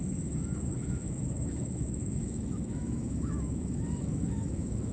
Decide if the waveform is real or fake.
fake